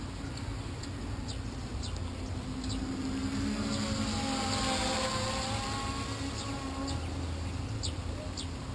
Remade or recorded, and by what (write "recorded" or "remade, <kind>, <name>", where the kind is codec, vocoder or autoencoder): recorded